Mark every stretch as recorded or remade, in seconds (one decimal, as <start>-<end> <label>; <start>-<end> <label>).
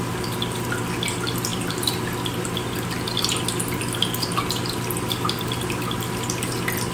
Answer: 0.0-6.9 remade